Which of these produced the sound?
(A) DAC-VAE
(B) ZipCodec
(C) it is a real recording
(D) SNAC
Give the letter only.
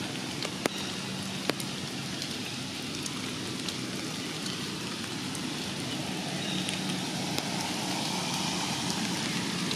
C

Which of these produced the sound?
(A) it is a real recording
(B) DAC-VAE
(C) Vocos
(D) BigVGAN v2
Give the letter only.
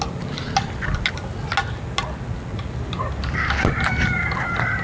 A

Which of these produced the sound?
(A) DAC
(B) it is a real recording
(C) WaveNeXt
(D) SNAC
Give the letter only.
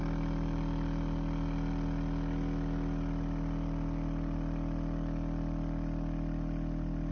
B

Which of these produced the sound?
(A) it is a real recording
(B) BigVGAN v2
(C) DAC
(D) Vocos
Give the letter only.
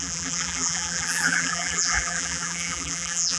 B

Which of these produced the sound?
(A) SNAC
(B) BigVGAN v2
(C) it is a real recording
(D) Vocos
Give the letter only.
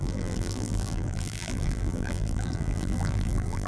B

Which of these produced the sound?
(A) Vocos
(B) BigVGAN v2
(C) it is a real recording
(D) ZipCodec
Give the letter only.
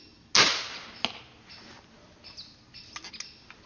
C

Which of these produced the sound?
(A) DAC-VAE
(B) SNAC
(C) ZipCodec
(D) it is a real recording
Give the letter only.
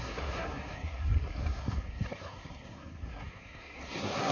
B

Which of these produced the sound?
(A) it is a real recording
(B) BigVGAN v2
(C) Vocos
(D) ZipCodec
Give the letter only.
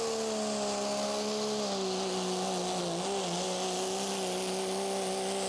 A